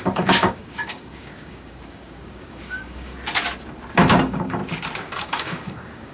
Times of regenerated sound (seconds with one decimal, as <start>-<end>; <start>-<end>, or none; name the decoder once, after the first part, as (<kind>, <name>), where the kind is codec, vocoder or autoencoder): 0.0-3.1 (codec, DAC); 3.9-4.6; 5.2-6.1